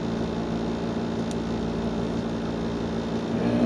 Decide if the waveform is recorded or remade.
recorded